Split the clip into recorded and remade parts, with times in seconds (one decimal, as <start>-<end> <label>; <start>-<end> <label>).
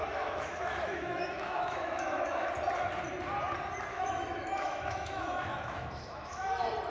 0.0-2.5 remade; 2.5-3.9 recorded; 3.9-6.5 remade; 6.5-6.9 recorded